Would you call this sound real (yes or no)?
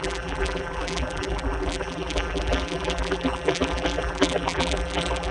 no